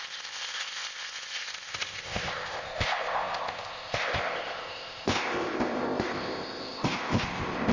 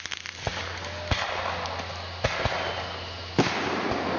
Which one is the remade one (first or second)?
first